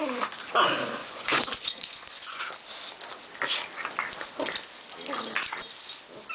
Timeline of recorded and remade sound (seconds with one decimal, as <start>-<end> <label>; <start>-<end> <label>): 0.0-1.0 recorded; 1.0-2.4 remade; 2.4-6.3 recorded

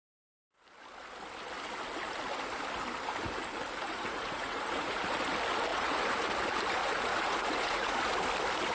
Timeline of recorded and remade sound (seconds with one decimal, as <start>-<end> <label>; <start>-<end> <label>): 0.0-3.8 recorded; 3.8-5.0 remade; 5.0-5.7 recorded; 5.7-6.3 remade; 6.3-6.8 recorded; 6.8-8.0 remade; 8.0-8.7 recorded

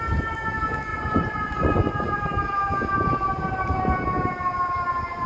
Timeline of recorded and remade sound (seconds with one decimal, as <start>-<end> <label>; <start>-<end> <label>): 0.0-0.9 recorded; 0.9-2.2 remade; 2.2-5.3 recorded